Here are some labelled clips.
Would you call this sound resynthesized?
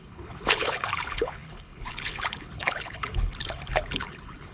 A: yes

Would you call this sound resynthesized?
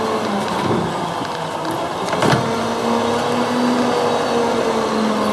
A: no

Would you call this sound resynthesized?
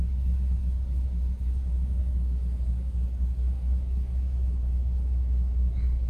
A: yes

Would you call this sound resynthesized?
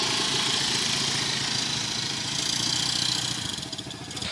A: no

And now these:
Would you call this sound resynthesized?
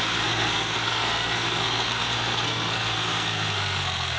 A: yes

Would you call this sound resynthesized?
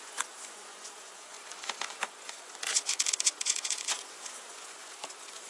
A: yes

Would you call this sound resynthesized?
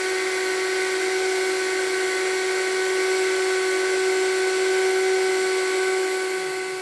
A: no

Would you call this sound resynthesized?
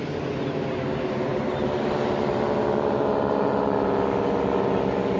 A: no